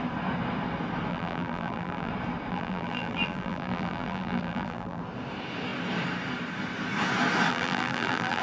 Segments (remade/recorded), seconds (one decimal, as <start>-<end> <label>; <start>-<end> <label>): 0.0-1.1 recorded; 1.1-2.1 remade; 2.1-2.5 recorded; 2.5-5.0 remade; 5.0-7.5 recorded; 7.5-8.4 remade